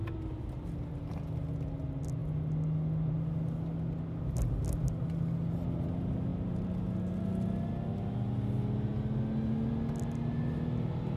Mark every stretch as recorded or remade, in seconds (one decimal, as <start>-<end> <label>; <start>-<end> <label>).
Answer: 0.0-11.2 recorded